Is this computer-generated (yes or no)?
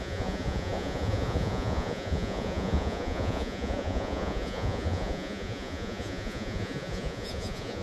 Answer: yes